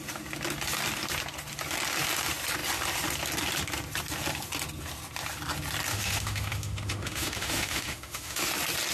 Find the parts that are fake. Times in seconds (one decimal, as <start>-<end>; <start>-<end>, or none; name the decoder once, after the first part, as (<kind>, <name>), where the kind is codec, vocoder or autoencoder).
5.9-8.5 (autoencoder, DAC-VAE)